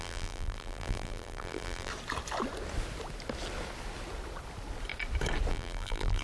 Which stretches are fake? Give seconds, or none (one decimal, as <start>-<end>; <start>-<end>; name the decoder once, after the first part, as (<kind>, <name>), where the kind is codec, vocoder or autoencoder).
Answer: 0.0-1.9 (vocoder, BigVGAN v2); 5.5-6.2